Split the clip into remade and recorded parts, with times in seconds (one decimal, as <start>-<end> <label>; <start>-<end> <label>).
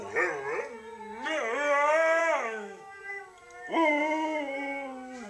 0.0-2.2 recorded; 2.2-3.0 remade; 3.0-5.3 recorded